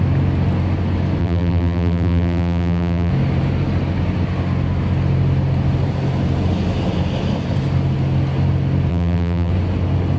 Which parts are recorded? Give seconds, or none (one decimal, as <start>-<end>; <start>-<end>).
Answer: 0.0-1.2; 3.1-8.9; 9.5-10.2